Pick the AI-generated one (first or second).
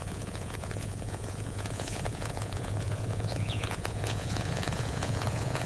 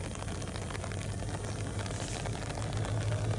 first